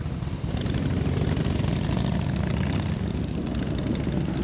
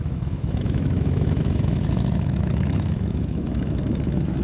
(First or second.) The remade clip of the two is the second